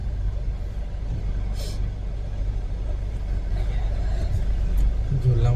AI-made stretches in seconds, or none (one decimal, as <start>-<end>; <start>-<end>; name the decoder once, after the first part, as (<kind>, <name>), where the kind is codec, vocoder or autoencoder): 0.0-3.1 (vocoder, BigVGAN v2); 3.5-4.5